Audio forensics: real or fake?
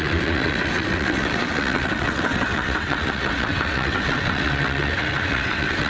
fake